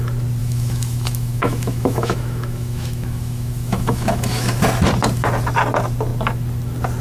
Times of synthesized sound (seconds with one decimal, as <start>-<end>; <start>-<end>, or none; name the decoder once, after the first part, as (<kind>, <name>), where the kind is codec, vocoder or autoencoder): 0.4-4.6 (autoencoder, DAC-VAE)